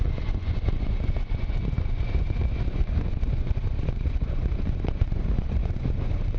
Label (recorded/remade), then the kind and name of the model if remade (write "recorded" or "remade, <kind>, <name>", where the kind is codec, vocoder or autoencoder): remade, vocoder, Vocos